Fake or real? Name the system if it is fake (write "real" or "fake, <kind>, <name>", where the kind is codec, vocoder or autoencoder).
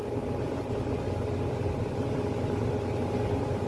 fake, vocoder, BigVGAN v2